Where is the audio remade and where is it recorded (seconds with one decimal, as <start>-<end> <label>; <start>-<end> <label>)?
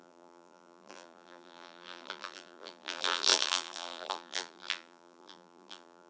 0.0-6.1 remade